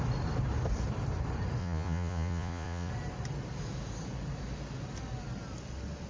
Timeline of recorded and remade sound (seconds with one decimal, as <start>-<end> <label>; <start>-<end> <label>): 0.0-1.6 recorded; 1.6-2.9 remade; 2.9-6.1 recorded